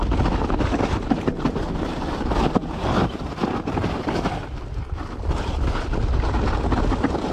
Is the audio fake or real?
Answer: real